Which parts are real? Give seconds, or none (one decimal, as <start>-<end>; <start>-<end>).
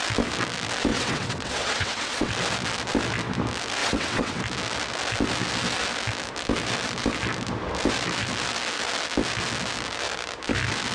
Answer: 0.0-0.9; 2.3-3.8; 4.4-10.9